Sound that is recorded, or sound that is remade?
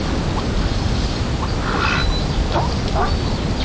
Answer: recorded